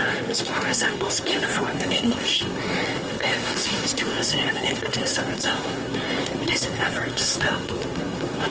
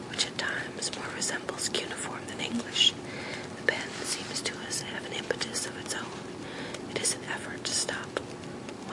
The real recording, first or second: second